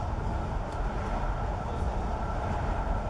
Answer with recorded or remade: recorded